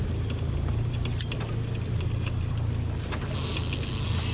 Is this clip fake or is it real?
real